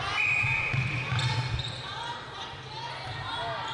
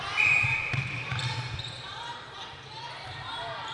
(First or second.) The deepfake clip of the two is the second